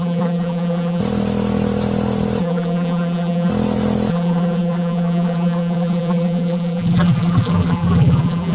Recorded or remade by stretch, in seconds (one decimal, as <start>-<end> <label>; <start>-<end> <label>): 0.0-1.0 remade; 1.0-2.4 recorded; 2.4-3.5 remade; 3.5-4.1 recorded; 4.1-8.5 remade